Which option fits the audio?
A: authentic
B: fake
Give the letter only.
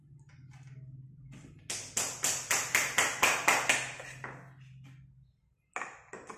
A